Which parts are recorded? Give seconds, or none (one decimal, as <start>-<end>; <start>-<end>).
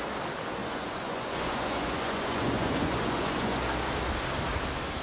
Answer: 0.0-0.6; 3.6-5.0